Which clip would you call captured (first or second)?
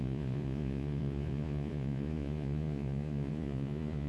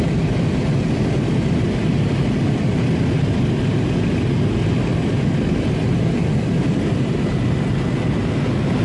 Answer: second